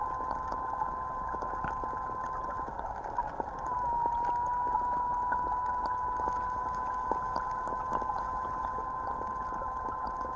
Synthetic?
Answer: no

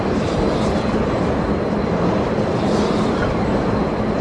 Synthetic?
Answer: no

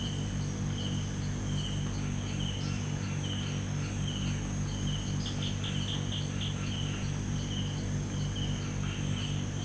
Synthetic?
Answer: no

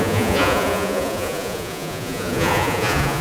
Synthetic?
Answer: yes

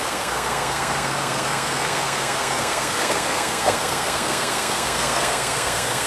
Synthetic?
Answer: yes